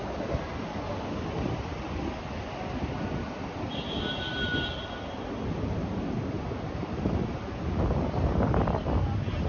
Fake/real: real